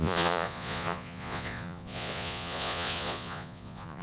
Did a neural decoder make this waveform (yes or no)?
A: yes